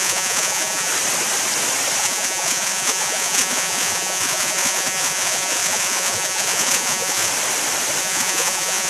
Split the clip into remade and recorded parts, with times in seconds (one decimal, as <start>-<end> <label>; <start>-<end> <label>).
0.0-0.9 remade; 0.9-2.0 recorded; 2.0-7.3 remade; 7.3-8.0 recorded; 8.0-8.9 remade